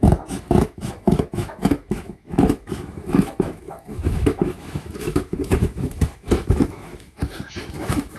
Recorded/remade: remade